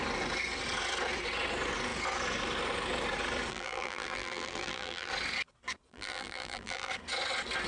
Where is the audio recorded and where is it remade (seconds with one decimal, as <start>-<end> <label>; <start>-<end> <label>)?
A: 0.0-3.5 recorded; 3.5-5.1 remade; 5.1-5.9 recorded; 5.9-6.9 remade; 6.9-7.7 recorded